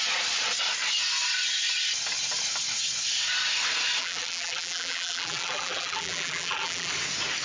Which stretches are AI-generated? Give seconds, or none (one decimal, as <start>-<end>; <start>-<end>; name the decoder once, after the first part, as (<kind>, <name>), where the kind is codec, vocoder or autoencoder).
4.0-6.9 (vocoder, BigVGAN v2)